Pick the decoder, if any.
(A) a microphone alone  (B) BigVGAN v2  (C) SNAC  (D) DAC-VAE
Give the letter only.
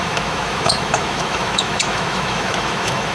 D